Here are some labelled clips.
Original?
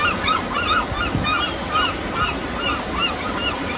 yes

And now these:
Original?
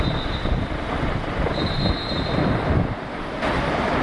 no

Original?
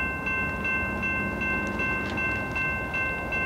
yes